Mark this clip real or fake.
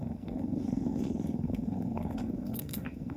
fake